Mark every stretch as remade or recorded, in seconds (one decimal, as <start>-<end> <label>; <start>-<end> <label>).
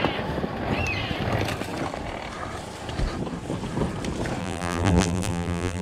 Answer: 0.0-4.4 recorded; 4.4-5.8 remade